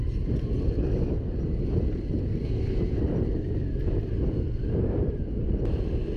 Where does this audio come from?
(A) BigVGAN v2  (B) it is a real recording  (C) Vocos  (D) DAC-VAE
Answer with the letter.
B